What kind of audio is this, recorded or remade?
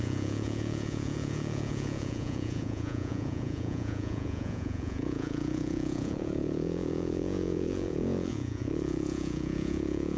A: remade